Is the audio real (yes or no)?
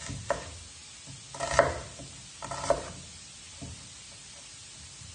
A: yes